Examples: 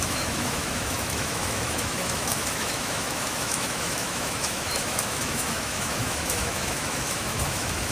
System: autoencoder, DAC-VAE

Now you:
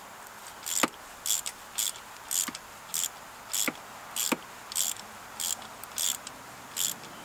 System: none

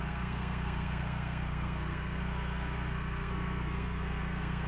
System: codec, SNAC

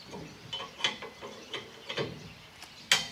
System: none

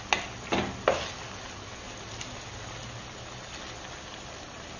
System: none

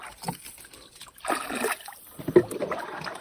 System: none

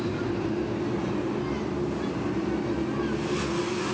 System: none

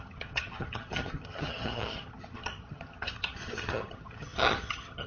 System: vocoder, HiFi-GAN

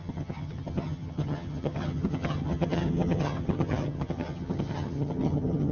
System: vocoder, HiFi-GAN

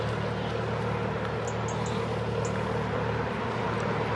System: none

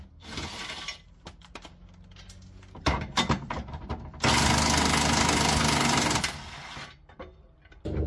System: none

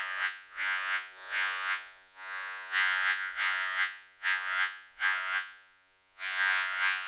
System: vocoder, Vocos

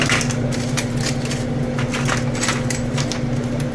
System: none